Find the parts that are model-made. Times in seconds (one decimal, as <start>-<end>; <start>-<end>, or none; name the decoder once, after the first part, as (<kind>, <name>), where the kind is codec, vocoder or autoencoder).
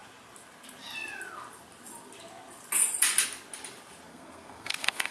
4.1-5.1 (codec, SNAC)